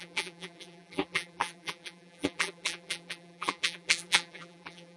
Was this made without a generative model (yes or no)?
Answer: no